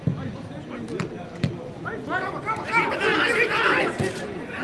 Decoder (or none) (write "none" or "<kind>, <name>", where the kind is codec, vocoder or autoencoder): none